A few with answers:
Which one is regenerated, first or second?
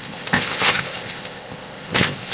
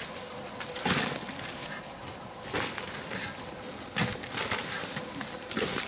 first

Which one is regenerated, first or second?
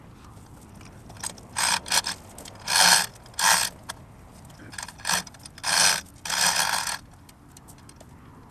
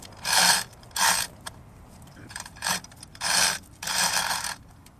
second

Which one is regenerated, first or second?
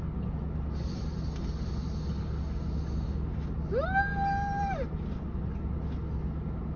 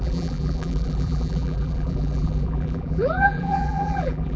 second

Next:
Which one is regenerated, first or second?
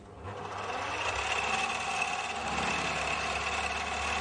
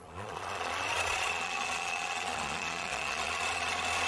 second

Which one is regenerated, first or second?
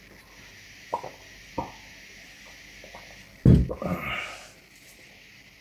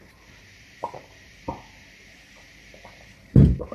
second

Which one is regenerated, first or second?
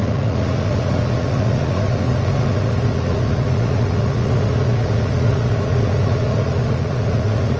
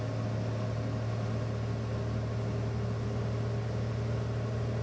first